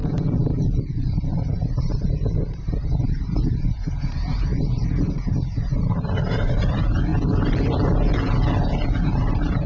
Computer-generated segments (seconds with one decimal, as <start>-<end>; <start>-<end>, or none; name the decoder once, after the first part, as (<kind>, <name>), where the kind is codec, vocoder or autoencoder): 0.0-4.5 (vocoder, BigVGAN v2); 5.3-7.1; 8.6-9.7